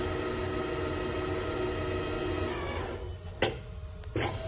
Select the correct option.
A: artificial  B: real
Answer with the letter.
B